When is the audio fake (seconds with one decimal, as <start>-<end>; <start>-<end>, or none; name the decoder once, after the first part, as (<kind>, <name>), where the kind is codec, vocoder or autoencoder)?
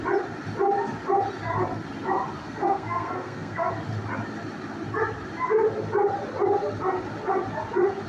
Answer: 2.4-3.7 (codec, SNAC)